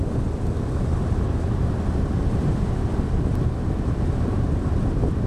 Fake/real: real